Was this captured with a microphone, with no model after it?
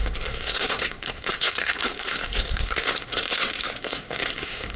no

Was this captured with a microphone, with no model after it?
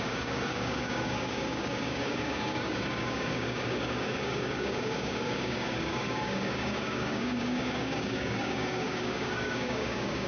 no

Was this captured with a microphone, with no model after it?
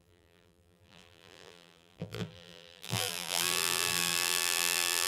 no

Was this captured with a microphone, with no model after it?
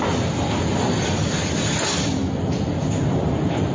yes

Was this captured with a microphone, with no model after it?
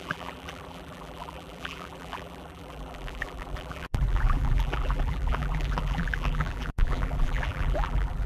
no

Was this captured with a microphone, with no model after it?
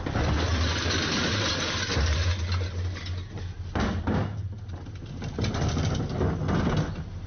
yes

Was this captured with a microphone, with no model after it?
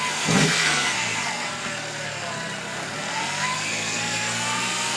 no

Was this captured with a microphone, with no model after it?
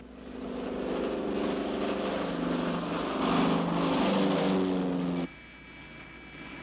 yes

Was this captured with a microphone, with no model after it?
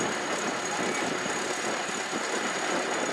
yes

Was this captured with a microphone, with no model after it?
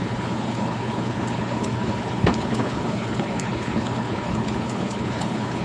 no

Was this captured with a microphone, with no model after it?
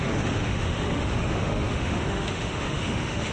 no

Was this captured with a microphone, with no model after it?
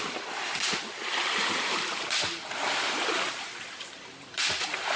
no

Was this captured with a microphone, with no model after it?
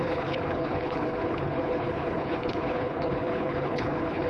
no